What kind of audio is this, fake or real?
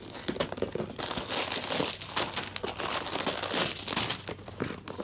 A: real